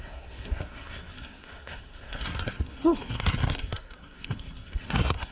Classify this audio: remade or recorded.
remade